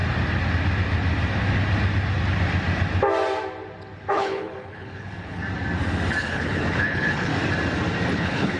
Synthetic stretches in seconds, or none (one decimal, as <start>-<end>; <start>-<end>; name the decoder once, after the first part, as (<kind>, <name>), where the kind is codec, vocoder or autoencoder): 4.1-5.4 (codec, HILCodec); 6.2-7.3; 8.1-8.6